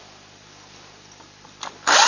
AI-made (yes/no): no